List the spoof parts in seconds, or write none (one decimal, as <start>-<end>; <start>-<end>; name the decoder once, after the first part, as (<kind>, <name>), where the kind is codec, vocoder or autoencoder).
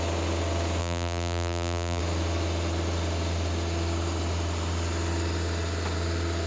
0.8-2.0 (vocoder, BigVGAN v2)